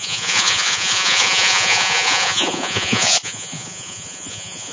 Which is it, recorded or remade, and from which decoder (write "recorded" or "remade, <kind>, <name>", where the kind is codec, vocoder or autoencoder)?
remade, vocoder, Vocos